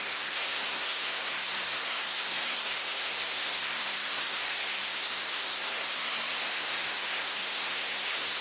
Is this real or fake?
fake